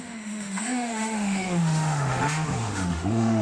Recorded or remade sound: remade